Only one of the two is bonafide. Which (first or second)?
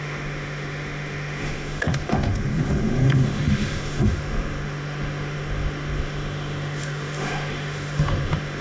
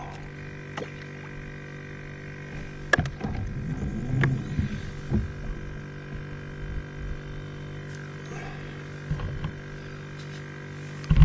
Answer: second